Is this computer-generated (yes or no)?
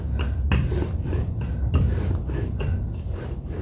no